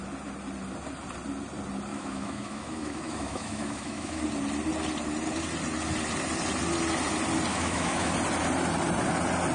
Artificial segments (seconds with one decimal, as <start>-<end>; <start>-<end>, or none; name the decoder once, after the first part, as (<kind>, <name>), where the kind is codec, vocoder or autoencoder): 1.9-4.2 (autoencoder, DAC-VAE); 7.5-8.1